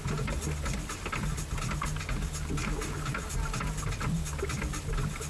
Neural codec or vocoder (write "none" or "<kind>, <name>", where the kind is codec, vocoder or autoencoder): none